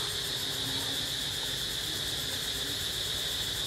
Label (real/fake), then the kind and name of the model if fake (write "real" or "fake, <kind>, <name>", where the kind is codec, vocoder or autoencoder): real